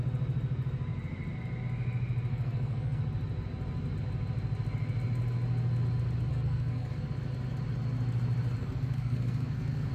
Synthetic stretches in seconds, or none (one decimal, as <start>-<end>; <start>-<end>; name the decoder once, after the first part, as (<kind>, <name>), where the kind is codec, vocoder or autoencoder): 2.3-3.0 (codec, SNAC); 6.3-7.0; 8.6-9.9